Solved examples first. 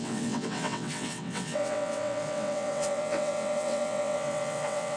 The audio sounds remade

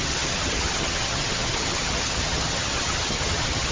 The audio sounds remade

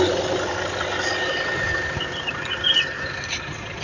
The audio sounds remade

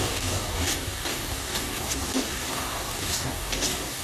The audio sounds remade